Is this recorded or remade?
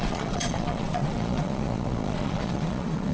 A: remade